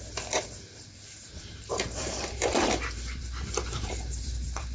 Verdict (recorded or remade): remade